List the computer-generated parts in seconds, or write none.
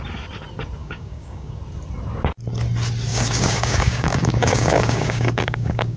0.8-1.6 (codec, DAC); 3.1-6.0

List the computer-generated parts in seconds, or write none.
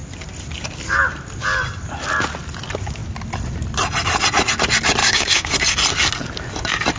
5.0-5.5 (codec, DAC)